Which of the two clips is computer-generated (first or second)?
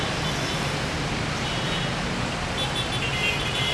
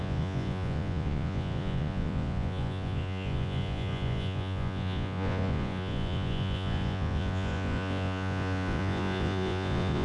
second